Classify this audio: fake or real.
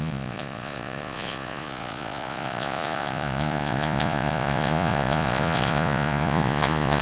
fake